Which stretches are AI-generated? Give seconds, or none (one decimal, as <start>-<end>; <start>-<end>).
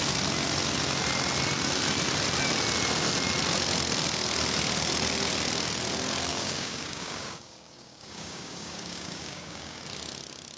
6.3-9.8